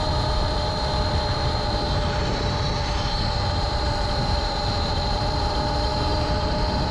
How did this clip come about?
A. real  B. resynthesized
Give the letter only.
B